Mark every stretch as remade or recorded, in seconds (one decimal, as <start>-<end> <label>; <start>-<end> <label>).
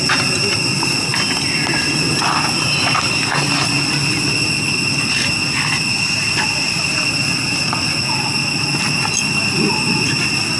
0.0-10.6 recorded